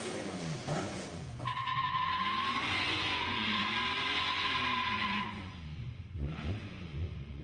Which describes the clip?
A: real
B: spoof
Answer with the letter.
B